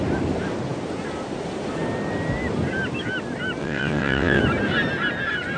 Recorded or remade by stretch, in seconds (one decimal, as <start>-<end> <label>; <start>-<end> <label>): 0.0-3.6 recorded; 3.6-4.4 remade; 4.4-5.6 recorded